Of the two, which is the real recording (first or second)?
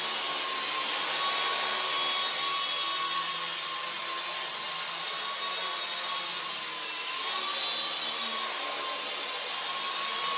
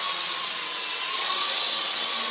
first